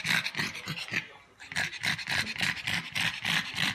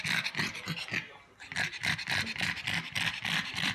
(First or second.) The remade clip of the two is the first